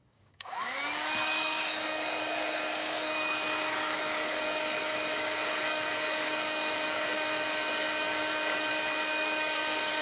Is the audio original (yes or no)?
no